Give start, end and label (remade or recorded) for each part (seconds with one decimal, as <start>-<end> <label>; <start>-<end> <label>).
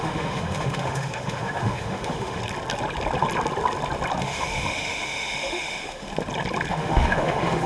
0.0-2.4 remade; 2.4-4.2 recorded; 4.2-6.1 remade; 6.1-6.7 recorded; 6.7-7.7 remade